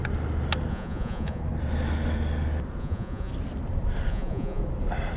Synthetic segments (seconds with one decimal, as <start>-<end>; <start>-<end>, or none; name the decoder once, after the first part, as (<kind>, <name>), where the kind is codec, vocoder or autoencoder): 0.7-1.4 (vocoder, Vocos); 2.8-3.3; 4.1-4.6